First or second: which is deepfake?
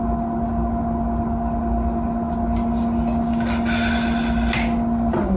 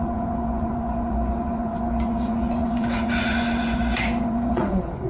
second